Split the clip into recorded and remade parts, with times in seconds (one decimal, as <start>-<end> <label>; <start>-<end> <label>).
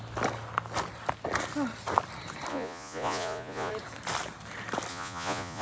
0.0-2.5 recorded; 2.5-3.7 remade; 3.7-4.9 recorded; 4.9-5.6 remade